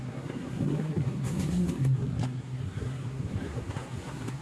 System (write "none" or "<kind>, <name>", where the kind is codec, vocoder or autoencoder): codec, SNAC